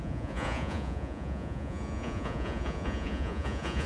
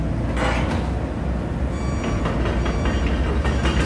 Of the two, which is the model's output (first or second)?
first